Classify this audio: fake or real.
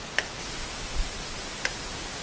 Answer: real